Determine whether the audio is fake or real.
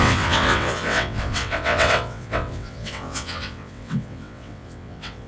fake